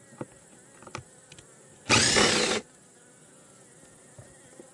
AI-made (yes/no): no